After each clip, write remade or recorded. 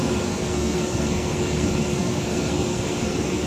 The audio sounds remade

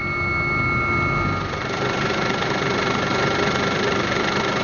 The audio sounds recorded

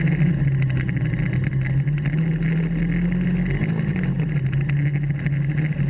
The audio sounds recorded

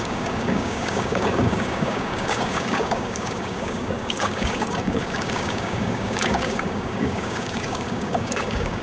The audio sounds remade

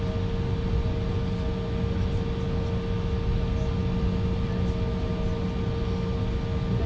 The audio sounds recorded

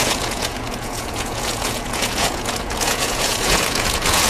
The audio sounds remade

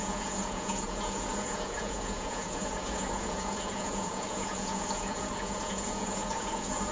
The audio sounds remade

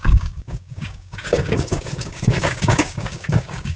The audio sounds remade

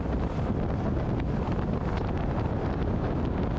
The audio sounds recorded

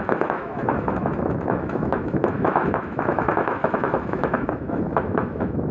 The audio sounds remade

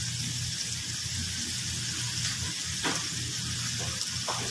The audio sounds recorded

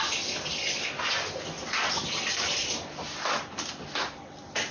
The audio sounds recorded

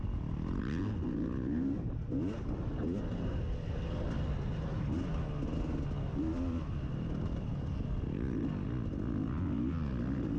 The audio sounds recorded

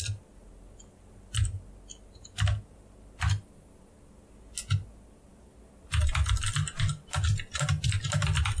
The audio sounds recorded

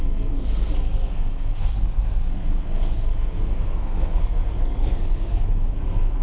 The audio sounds remade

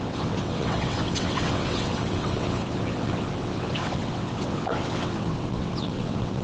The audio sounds remade